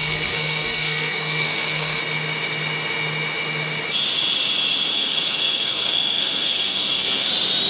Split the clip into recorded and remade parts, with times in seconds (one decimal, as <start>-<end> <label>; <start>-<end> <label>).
0.0-2.0 remade; 2.0-4.9 recorded; 4.9-7.3 remade; 7.3-7.7 recorded